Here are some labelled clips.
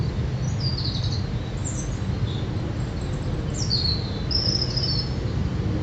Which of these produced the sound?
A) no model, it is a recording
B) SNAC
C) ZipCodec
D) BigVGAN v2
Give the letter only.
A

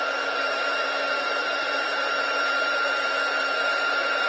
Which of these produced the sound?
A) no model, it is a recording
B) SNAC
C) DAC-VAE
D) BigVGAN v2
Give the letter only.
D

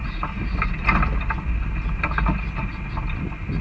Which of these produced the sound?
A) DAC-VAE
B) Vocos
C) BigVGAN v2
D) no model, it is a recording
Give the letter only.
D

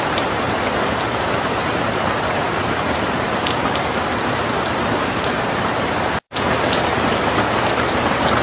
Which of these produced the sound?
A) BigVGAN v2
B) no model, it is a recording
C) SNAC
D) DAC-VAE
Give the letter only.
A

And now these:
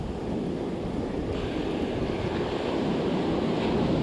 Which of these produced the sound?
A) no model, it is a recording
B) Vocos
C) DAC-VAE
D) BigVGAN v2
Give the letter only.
A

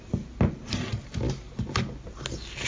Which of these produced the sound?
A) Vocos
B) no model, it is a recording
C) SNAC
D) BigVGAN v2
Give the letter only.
B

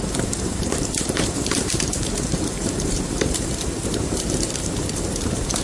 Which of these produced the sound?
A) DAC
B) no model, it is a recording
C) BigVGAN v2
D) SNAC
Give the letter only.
C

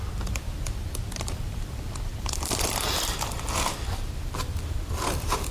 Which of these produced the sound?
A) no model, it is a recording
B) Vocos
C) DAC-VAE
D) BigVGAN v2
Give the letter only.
D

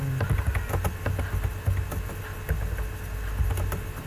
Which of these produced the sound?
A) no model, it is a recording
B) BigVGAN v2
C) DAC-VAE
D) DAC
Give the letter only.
A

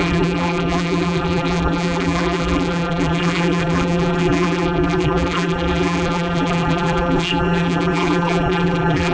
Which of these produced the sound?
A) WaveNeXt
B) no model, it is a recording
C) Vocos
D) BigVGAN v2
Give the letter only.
D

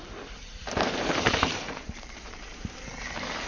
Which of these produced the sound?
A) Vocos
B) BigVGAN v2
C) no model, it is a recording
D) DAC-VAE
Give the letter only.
B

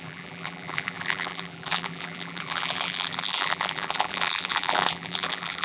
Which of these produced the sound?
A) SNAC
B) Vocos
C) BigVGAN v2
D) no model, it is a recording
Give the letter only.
C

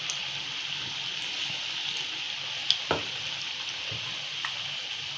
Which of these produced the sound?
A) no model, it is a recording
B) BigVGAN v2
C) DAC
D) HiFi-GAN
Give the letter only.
A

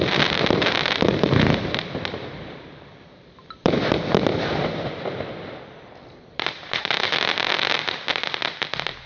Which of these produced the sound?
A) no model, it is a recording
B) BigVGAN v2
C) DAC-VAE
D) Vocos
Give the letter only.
B